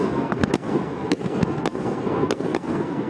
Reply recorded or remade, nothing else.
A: remade